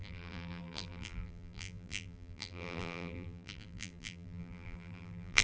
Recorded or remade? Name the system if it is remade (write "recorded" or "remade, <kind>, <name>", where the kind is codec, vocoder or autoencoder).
remade, vocoder, BigVGAN v2